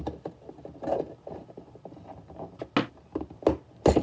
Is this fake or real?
real